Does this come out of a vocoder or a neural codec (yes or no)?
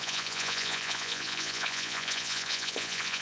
yes